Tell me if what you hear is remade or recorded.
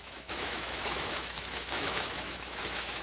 remade